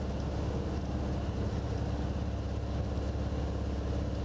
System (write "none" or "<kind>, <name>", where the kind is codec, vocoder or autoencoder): none